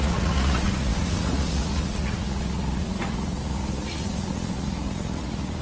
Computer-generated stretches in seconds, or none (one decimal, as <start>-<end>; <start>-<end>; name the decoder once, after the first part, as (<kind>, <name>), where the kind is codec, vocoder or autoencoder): 0.0-5.6 (vocoder, Vocos)

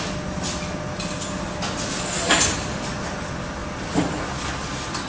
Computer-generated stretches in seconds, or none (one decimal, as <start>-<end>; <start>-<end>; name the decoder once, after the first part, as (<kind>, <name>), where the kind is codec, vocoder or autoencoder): none

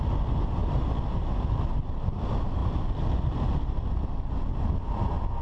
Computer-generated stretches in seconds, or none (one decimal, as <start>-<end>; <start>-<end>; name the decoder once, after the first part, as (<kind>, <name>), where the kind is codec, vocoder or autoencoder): none

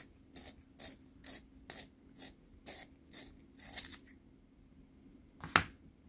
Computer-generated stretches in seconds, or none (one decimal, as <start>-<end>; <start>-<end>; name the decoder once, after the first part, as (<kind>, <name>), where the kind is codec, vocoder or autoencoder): none